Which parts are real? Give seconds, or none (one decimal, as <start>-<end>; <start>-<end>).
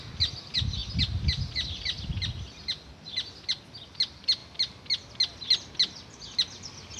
0.0-7.0